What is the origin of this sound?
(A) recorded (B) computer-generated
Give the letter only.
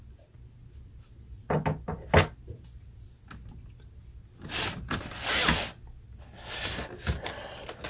A